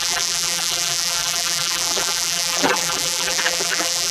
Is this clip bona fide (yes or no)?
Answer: no